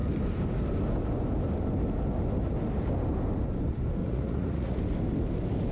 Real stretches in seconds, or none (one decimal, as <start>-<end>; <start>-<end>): 0.0-4.0; 4.8-5.7